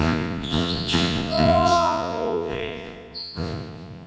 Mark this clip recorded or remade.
remade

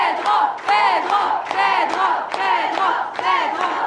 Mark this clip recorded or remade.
recorded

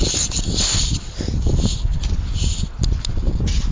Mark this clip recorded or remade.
recorded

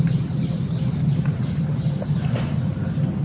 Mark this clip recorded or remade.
recorded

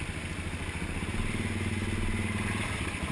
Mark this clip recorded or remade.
recorded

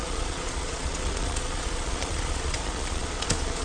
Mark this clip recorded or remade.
remade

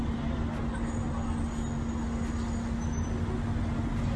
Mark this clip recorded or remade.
recorded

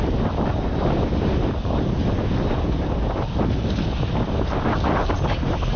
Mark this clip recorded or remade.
recorded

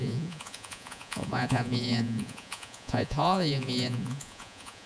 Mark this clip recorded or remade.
remade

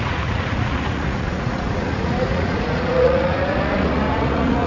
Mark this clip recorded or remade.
remade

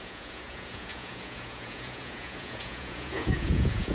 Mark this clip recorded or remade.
remade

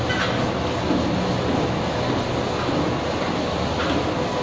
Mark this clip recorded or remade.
recorded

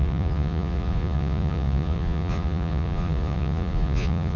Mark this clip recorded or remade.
remade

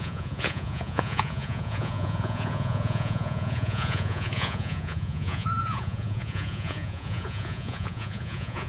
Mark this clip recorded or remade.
remade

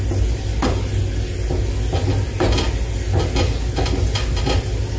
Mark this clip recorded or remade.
recorded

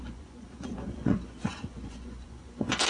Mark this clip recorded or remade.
remade